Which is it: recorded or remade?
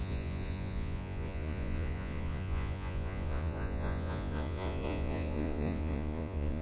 remade